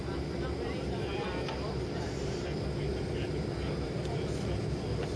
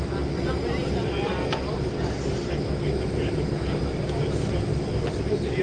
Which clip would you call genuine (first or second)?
second